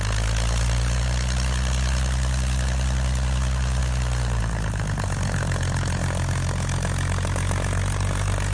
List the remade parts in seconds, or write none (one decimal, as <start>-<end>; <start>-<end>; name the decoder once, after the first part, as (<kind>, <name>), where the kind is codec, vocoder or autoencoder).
none